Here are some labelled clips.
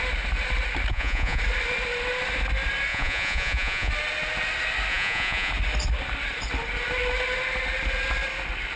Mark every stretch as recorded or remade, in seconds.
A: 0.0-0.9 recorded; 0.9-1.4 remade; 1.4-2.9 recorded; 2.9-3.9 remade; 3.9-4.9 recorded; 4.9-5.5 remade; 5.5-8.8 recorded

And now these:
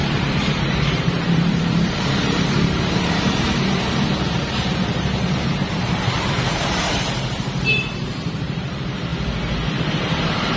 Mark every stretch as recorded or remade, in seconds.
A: 0.0-9.1 remade; 9.1-9.8 recorded; 9.8-10.6 remade

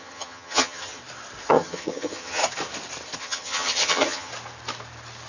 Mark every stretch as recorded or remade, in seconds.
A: 0.0-1.0 remade; 1.0-1.5 recorded; 1.5-2.4 remade; 2.4-3.2 recorded; 3.2-4.3 remade; 4.3-5.3 recorded

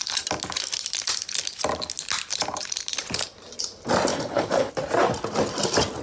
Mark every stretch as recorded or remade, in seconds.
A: 0.0-4.1 recorded; 4.1-4.7 remade; 4.7-6.0 recorded

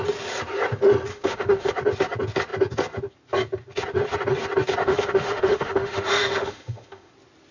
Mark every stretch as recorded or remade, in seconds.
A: 0.0-1.1 recorded; 1.1-1.7 remade; 1.7-4.8 recorded; 4.8-7.1 remade; 7.1-7.5 recorded

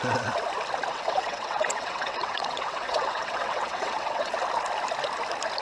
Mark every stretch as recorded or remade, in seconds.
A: 0.0-0.9 recorded; 0.9-4.3 remade; 4.3-5.6 recorded

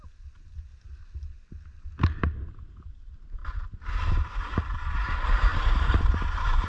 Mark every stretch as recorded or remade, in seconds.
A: 0.0-0.7 remade; 0.7-2.0 recorded; 2.0-3.4 remade; 3.4-4.3 recorded; 4.3-6.7 remade